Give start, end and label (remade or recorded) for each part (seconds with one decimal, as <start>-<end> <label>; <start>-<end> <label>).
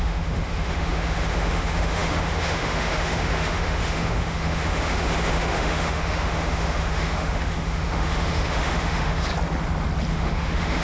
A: 0.0-9.3 remade; 9.3-10.1 recorded; 10.1-10.8 remade